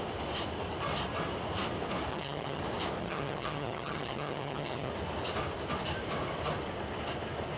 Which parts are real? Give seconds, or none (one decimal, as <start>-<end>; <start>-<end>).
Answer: 0.0-2.1; 2.6-3.0; 4.9-7.6